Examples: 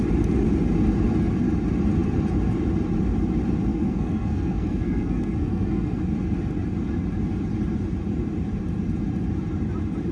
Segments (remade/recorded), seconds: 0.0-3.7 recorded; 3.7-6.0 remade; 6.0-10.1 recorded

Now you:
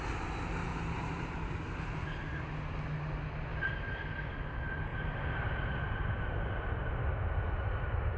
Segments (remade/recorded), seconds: 0.0-0.7 recorded; 0.7-1.5 remade; 1.5-4.9 recorded; 4.9-6.3 remade; 6.3-8.2 recorded

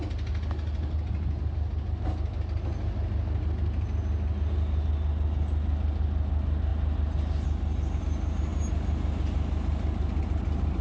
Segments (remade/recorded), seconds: 0.0-10.8 recorded

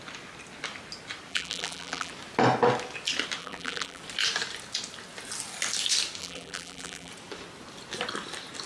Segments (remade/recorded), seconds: 0.0-1.3 recorded; 1.3-2.1 remade; 2.1-3.4 recorded; 3.4-4.0 remade; 4.0-6.2 recorded; 6.2-7.1 remade; 7.1-8.7 recorded

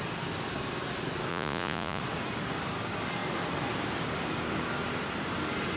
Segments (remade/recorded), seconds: 0.0-1.3 recorded; 1.3-2.0 remade; 2.0-5.8 recorded

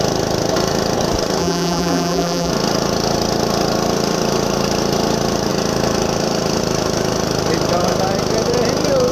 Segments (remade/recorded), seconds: 0.0-1.4 recorded; 1.4-2.5 remade; 2.5-9.1 recorded

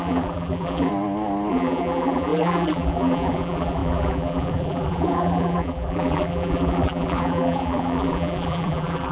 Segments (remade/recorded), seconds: 0.0-0.9 remade; 0.9-1.5 recorded; 1.5-9.1 remade

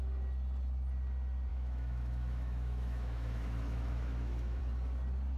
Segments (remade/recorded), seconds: 0.0-1.5 recorded; 1.5-4.6 remade; 4.6-5.4 recorded